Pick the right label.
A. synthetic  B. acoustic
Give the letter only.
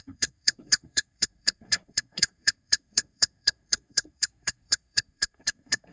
A